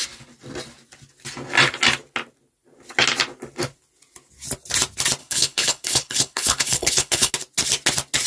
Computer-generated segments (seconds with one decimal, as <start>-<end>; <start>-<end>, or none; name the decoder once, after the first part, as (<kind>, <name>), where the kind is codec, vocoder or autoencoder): 5.2-7.3 (codec, HILCodec)

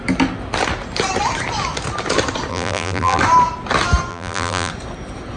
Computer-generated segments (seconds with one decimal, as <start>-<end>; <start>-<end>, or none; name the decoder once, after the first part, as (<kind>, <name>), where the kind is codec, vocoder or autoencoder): 2.5-3.2 (vocoder, BigVGAN v2); 4.1-4.7